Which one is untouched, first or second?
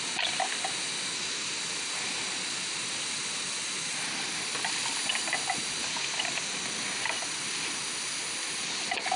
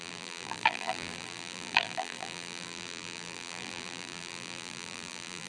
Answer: first